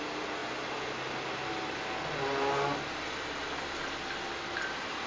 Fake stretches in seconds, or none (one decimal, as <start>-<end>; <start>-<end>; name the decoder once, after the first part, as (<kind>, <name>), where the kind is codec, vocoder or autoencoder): none